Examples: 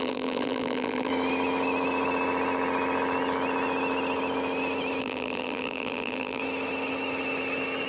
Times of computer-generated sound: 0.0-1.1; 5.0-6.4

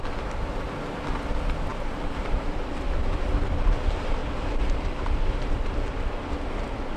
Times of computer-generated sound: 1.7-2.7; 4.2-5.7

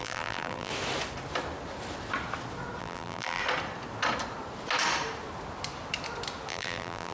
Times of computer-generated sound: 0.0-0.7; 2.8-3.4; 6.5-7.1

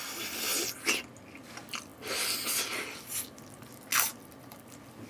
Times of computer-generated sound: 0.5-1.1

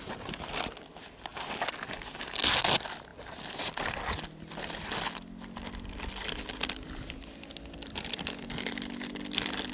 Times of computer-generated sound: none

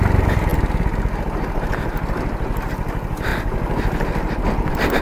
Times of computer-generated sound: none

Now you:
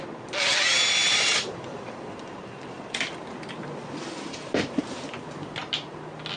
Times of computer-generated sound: 1.0-4.8

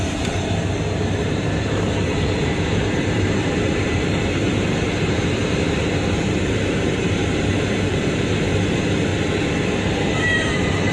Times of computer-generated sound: 0.0-9.1; 9.8-10.9